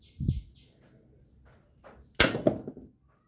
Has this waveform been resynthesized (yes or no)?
no